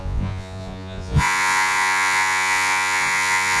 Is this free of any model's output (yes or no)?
no